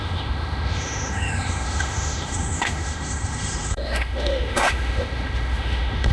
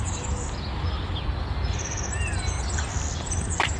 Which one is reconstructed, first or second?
first